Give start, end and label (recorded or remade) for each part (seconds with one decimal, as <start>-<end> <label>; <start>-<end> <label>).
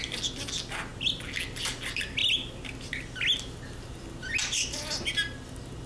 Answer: 0.0-5.9 recorded